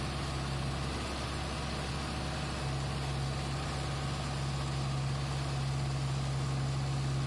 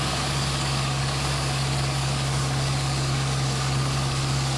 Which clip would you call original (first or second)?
first